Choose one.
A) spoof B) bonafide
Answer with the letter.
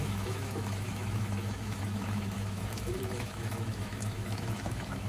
A